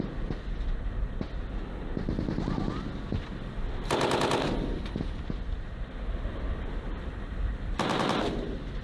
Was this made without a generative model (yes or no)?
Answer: yes